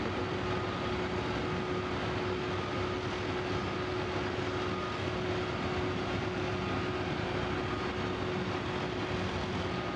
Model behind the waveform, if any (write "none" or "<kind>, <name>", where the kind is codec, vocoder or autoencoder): none